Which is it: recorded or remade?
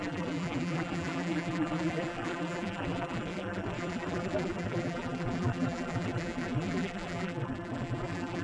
remade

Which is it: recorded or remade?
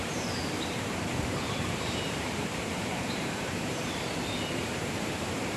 remade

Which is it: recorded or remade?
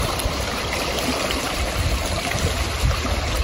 recorded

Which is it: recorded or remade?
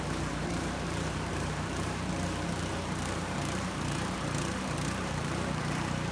remade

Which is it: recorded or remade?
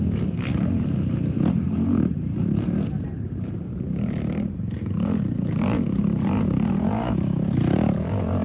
remade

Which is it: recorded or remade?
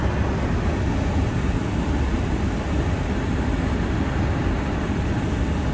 recorded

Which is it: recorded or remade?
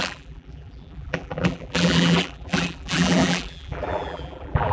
remade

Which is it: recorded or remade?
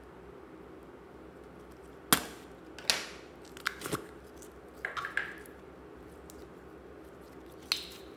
recorded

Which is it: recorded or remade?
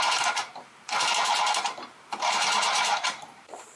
remade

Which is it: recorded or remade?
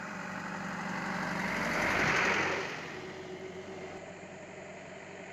remade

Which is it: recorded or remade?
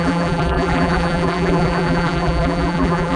remade